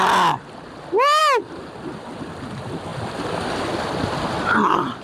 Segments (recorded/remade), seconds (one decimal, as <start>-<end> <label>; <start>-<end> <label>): 0.0-5.0 recorded